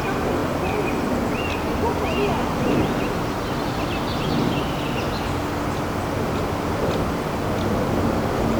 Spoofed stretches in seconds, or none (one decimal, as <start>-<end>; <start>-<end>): none